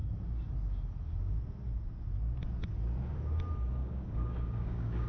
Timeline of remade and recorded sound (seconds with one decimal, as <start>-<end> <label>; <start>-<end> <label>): 0.0-3.8 recorded; 3.8-5.1 remade